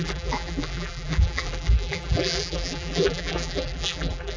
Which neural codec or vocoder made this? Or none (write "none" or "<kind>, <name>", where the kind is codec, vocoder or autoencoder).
vocoder, BigVGAN v2